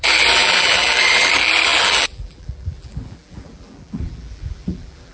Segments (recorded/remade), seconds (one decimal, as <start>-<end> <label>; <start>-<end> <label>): 0.0-5.1 remade